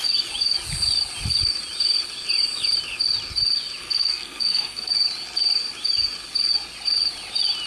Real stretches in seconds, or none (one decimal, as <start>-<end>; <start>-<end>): 0.0-3.8; 4.9-7.7